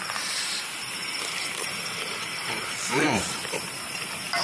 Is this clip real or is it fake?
fake